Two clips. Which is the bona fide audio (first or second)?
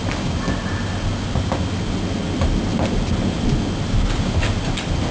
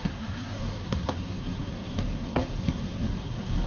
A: first